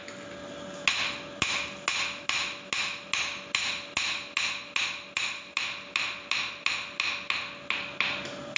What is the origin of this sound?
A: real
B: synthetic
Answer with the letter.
A